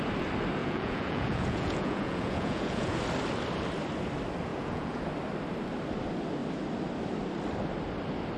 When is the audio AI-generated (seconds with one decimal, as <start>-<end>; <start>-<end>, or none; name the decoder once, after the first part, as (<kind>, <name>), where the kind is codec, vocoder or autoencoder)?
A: 0.6-3.0 (vocoder, Vocos); 4.5-5.0